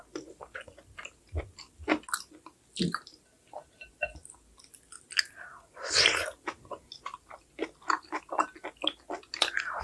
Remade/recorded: recorded